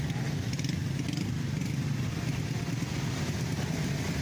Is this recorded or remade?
recorded